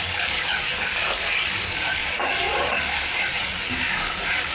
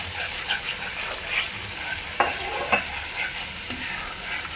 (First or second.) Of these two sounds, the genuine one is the second